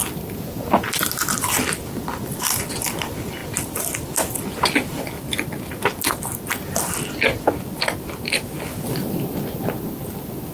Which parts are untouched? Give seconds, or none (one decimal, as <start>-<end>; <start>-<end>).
0.0-10.5